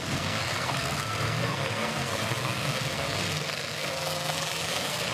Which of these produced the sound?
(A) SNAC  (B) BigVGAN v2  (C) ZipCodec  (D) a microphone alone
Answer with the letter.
A